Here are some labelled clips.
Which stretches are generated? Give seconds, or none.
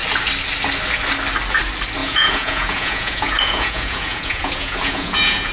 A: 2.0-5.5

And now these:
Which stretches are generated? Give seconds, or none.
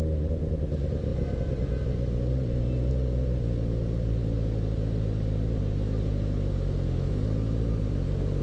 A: none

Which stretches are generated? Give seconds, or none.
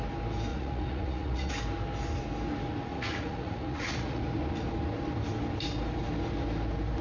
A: 0.5-1.5; 2.9-4.2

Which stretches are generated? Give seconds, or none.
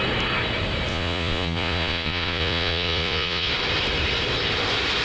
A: 0.9-3.5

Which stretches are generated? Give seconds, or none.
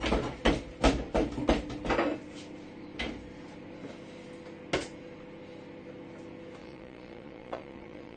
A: 6.6-8.2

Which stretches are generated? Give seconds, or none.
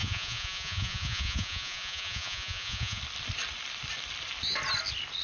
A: 0.0-3.0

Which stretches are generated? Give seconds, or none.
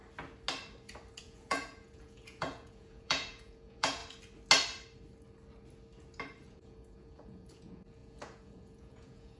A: 1.2-4.0; 6.5-9.4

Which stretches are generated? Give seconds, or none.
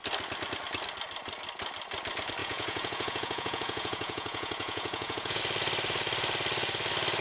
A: 2.4-5.4